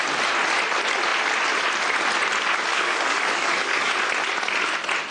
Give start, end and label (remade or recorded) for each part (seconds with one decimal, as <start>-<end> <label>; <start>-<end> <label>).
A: 0.0-2.7 recorded; 2.7-3.9 remade; 3.9-5.1 recorded